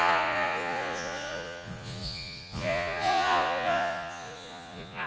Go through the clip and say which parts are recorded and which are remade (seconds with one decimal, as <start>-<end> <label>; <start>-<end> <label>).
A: 0.0-5.1 remade